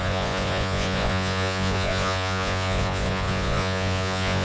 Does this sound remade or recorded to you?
remade